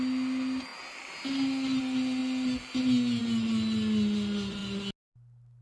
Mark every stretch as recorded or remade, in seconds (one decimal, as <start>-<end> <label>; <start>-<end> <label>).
0.0-5.6 recorded